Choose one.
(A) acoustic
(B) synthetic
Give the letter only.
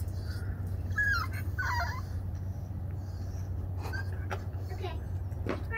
A